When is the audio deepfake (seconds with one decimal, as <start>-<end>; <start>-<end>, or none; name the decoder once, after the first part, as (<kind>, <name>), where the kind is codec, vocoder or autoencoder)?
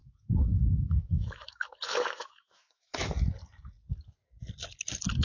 0.0-3.1 (autoencoder, DAC-VAE)